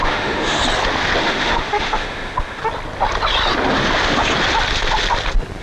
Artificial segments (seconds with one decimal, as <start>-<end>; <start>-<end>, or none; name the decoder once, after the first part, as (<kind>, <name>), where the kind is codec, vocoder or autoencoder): 0.0-0.6 (autoencoder, DAC-VAE); 1.2-2.6